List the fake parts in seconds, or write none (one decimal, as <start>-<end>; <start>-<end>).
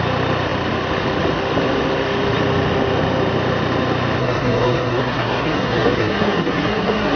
4.2-7.2